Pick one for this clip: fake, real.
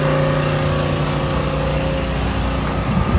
real